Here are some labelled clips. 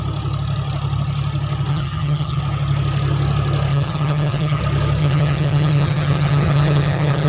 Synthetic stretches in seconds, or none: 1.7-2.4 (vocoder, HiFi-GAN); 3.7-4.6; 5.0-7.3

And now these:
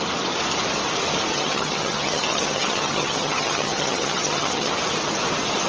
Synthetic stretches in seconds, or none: 1.3-4.7 (vocoder, HiFi-GAN)

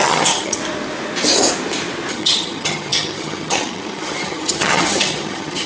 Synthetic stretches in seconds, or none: 0.0-0.6 (vocoder, HiFi-GAN); 2.1-5.7

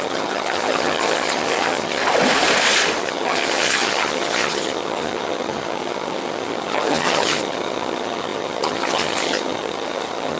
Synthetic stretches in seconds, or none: 0.0-2.0 (vocoder, HiFi-GAN); 3.0-10.4

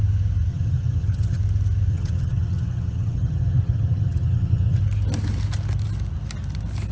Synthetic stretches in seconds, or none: 0.5-1.4 (vocoder, HiFi-GAN); 1.9-4.8

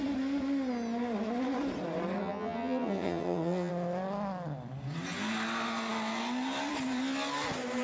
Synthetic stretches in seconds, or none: 2.2-3.7 (vocoder, HiFi-GAN)